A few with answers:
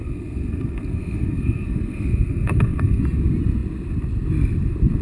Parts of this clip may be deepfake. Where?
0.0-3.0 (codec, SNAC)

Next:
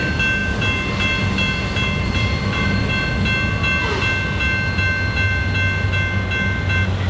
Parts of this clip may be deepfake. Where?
0.4-2.9 (vocoder, BigVGAN v2)

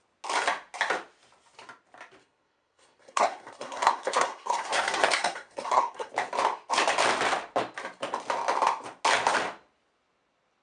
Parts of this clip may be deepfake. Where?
2.2-6.1 (codec, SNAC)

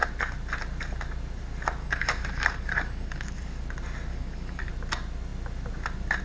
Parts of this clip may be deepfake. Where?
1.8-3.6 (codec, DAC); 4.1-4.7